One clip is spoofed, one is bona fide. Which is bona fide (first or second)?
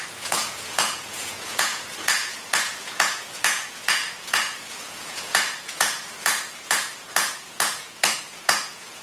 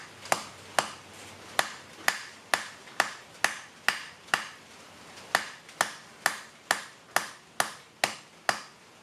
second